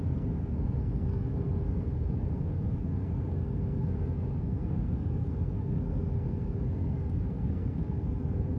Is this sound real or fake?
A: fake